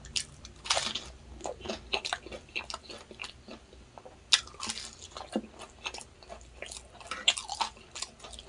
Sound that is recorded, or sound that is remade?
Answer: recorded